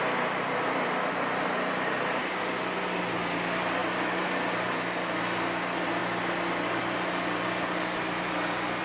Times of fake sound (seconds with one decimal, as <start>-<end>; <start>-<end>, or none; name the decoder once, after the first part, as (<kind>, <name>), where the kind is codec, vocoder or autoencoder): 3.8-5.2 (vocoder, BigVGAN v2)